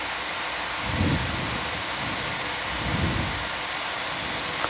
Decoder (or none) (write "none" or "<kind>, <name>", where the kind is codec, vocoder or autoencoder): none